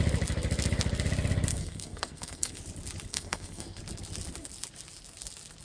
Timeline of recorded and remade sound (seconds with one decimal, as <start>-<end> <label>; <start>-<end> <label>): 0.0-1.5 recorded; 1.5-2.6 remade; 2.6-3.1 recorded; 3.1-3.8 remade; 3.8-5.6 recorded